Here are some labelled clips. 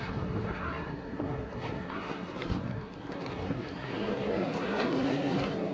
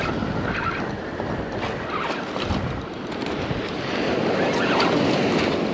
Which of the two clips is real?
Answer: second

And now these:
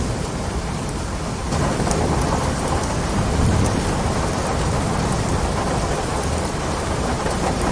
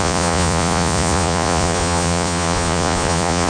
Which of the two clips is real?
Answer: first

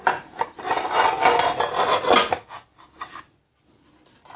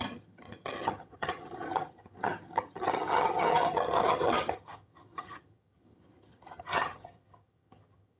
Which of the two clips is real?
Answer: first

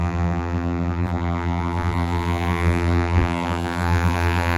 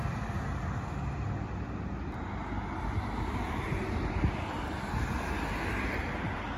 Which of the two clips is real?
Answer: second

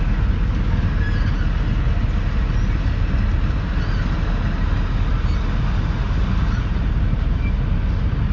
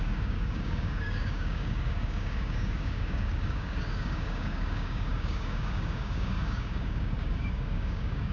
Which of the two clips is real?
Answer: first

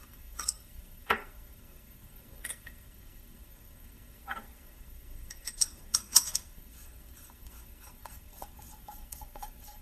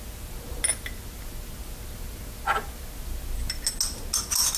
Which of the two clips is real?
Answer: second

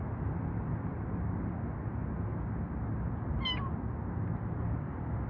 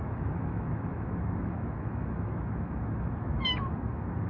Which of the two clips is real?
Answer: first